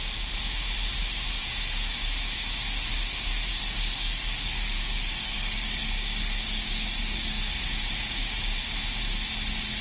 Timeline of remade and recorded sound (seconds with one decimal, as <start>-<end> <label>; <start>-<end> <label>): 0.0-3.5 recorded; 3.5-7.5 remade; 7.5-9.8 recorded